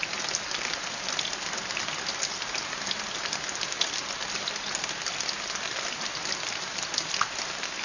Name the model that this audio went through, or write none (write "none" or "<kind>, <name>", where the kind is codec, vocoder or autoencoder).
none